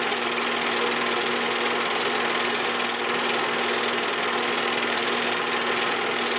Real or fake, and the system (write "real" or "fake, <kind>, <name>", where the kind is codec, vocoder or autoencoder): real